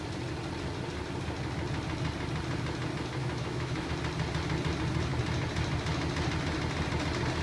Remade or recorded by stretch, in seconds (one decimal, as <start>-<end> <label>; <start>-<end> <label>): 0.0-3.2 recorded; 3.2-3.9 remade; 3.9-7.4 recorded